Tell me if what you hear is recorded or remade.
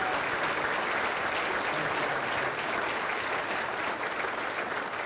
recorded